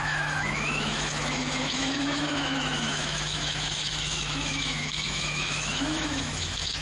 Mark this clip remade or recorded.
remade